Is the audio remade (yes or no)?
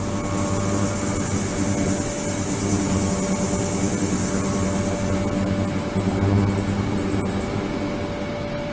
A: no